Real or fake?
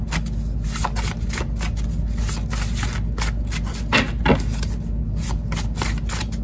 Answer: real